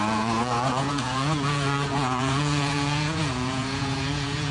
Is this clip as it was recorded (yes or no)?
no